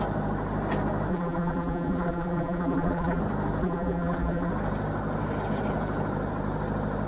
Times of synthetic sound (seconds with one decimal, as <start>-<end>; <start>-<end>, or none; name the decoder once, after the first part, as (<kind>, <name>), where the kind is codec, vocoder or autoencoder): 1.1-3.2 (vocoder, BigVGAN v2); 3.6-4.5